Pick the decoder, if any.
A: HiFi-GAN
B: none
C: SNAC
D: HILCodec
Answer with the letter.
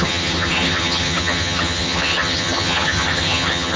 A